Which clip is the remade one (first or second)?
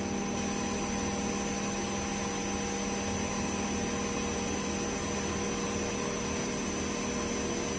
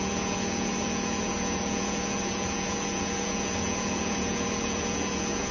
second